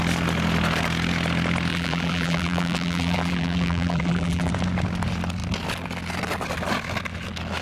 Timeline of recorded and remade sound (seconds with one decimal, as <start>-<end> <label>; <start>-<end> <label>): 0.0-1.7 recorded; 1.7-4.5 remade; 4.5-7.6 recorded